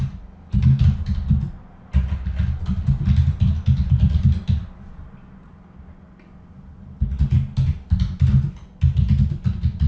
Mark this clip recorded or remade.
recorded